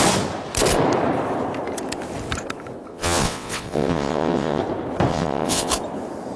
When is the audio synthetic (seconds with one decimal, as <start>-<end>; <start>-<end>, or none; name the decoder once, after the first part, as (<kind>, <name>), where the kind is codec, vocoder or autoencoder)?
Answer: 2.9-4.6 (vocoder, WaveNeXt); 5.1-5.7